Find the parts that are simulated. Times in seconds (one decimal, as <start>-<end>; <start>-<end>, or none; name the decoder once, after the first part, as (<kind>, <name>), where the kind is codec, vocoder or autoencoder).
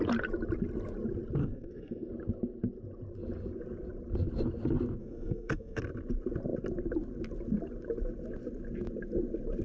1.4-2.1 (codec, SNAC); 5.0-5.8